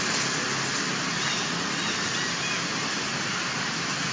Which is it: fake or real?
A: real